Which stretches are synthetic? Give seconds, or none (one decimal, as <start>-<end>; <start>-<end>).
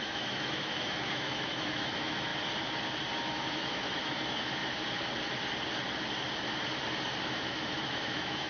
0.0-2.3; 3.2-4.6; 7.3-8.5